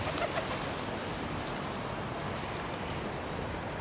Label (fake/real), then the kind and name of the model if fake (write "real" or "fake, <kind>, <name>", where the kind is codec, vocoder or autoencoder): real